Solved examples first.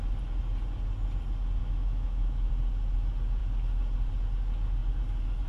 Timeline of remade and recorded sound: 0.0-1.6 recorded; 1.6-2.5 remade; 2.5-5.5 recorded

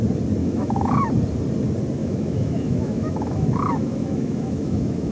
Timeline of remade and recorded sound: 0.0-0.4 recorded; 0.4-1.0 remade; 1.0-2.0 recorded; 2.0-5.1 remade